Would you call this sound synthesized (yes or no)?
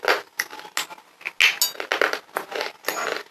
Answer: no